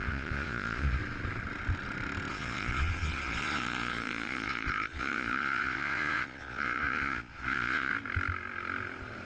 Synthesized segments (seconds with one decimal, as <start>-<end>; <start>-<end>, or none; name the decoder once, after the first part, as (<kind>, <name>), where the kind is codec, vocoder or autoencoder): 0.0-1.0 (vocoder, Vocos); 2.3-7.9